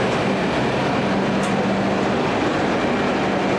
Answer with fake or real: real